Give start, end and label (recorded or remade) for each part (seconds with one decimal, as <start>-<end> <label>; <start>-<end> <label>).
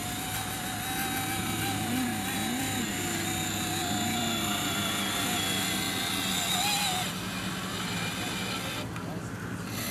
0.0-1.4 recorded; 1.4-2.9 remade; 2.9-3.8 recorded; 3.8-4.9 remade; 4.9-9.9 recorded